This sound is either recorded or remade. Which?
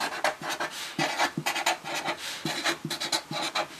recorded